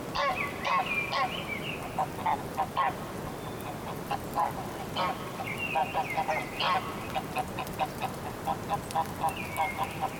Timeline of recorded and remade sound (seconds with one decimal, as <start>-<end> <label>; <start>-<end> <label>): 0.0-10.2 recorded